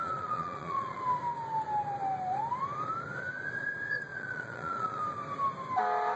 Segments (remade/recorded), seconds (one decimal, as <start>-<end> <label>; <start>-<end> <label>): 0.0-1.0 remade; 1.0-4.1 recorded; 4.1-5.0 remade; 5.0-6.2 recorded